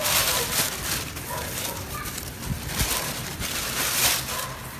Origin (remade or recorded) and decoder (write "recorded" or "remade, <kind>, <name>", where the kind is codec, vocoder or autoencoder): remade, vocoder, BigVGAN v2